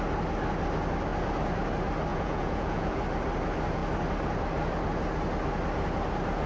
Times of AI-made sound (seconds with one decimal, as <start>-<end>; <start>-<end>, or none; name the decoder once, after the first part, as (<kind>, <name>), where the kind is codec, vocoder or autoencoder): 2.1-3.0 (vocoder, Vocos)